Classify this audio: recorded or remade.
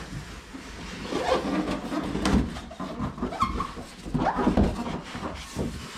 recorded